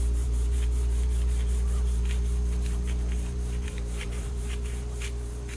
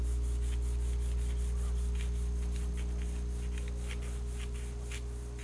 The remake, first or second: first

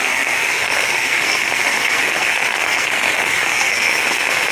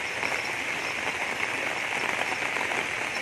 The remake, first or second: first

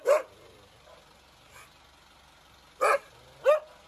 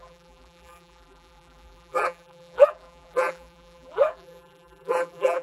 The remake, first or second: second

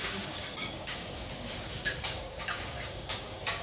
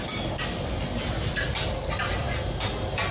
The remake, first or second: first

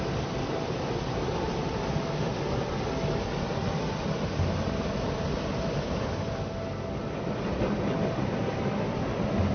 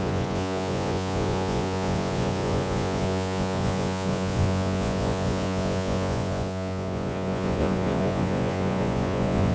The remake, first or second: second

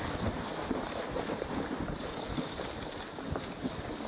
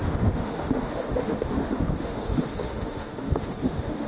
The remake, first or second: second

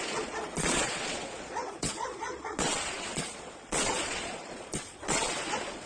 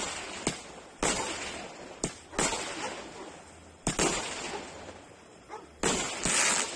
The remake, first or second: first